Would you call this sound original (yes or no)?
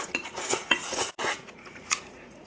no